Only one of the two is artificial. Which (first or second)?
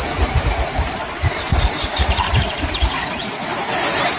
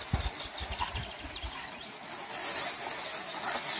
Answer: first